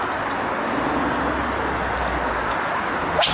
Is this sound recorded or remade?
recorded